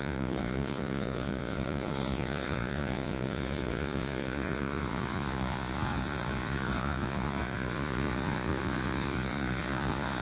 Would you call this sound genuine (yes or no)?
no